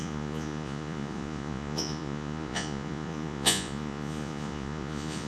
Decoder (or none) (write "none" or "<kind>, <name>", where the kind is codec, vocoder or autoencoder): vocoder, Vocos